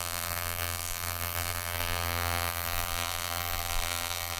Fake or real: fake